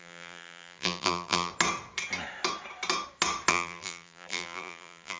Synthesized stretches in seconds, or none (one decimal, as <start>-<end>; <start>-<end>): 0.0-1.5; 3.5-5.2